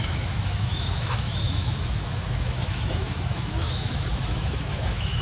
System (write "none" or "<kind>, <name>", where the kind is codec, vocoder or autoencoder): autoencoder, DAC-VAE